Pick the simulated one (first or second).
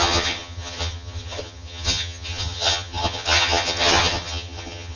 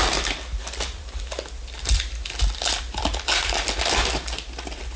first